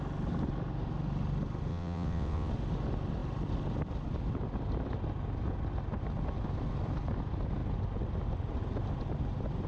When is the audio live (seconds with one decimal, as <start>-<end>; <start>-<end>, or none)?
0.0-1.7; 2.5-9.7